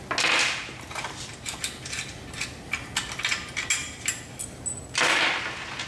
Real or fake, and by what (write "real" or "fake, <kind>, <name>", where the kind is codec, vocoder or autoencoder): real